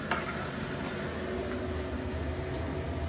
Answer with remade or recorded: recorded